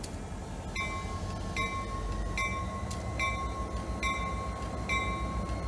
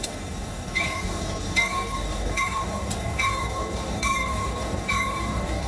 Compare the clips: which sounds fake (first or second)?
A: second